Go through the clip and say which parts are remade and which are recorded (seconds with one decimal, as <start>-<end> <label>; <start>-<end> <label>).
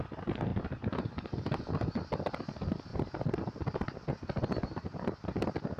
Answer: 0.0-2.9 recorded; 2.9-4.1 remade; 4.1-5.8 recorded